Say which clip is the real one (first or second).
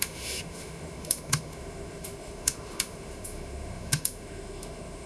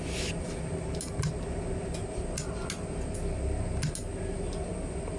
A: second